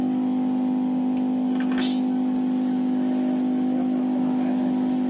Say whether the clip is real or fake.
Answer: real